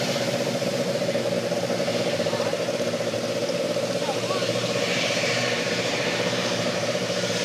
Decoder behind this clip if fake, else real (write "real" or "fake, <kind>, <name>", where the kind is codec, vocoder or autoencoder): fake, vocoder, BigVGAN v2